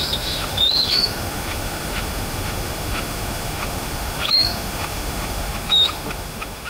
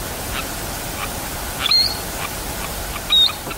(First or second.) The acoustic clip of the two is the second